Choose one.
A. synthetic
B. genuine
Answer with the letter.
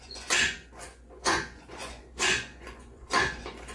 A